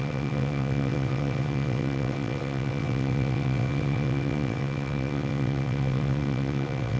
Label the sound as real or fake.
fake